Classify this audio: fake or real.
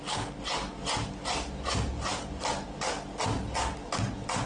real